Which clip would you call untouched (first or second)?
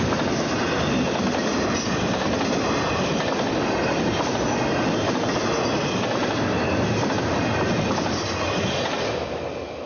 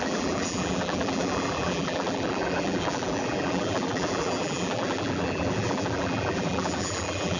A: first